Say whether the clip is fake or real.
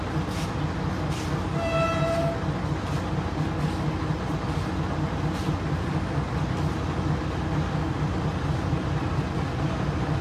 real